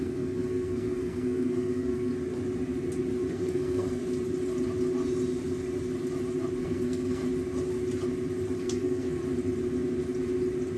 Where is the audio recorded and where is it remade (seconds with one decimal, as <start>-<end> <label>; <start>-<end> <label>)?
0.0-2.1 remade; 2.1-3.3 recorded; 3.3-4.0 remade; 4.0-6.6 recorded; 6.6-7.2 remade; 7.2-8.6 recorded; 8.6-9.2 remade; 9.2-10.8 recorded